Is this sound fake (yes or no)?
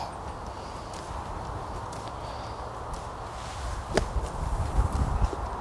no